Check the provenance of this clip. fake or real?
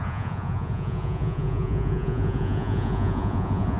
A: fake